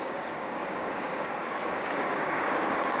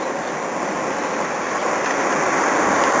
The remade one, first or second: first